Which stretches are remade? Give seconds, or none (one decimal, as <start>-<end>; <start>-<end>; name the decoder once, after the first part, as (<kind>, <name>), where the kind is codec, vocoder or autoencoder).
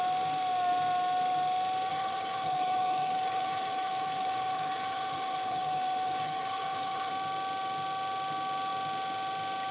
1.9-7.1 (codec, HILCodec)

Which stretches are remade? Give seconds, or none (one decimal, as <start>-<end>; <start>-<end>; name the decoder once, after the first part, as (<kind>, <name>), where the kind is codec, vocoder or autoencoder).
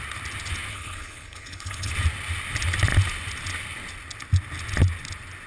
0.7-1.9 (codec, HILCodec)